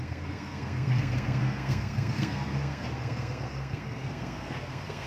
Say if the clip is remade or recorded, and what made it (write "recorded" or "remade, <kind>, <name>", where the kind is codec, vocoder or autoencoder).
remade, codec, SNAC